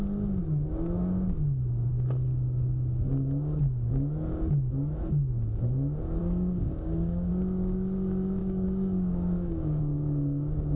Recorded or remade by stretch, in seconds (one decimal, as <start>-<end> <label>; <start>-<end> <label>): 0.0-6.2 recorded; 6.2-7.3 remade; 7.3-8.4 recorded; 8.4-9.8 remade; 9.8-10.8 recorded